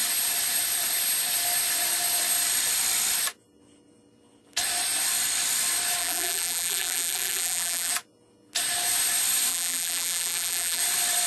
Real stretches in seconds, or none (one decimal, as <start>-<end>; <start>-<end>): 0.0-6.0; 7.9-9.5; 10.8-11.3